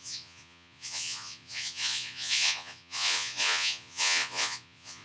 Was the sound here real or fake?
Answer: fake